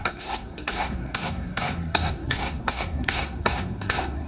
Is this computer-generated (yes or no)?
yes